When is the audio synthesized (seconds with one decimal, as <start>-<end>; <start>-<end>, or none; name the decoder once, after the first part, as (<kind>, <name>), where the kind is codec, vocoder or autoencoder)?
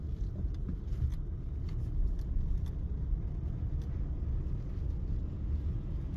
none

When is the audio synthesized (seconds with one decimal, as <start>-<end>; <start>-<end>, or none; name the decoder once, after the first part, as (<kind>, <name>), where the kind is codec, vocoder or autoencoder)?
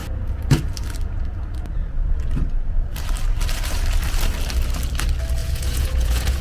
5.4-6.4 (vocoder, Vocos)